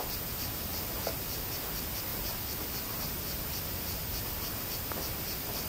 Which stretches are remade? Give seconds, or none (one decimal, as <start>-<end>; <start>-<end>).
none